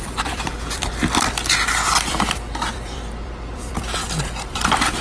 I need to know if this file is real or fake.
fake